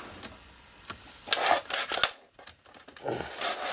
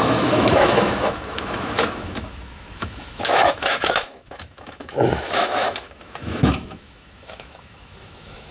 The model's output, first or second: second